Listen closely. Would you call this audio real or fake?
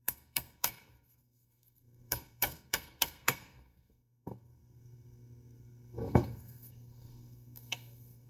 fake